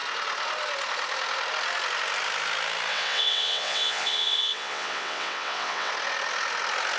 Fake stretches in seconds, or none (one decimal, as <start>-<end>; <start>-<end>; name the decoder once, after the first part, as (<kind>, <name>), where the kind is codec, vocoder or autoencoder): 2.9-5.9 (vocoder, WaveNeXt)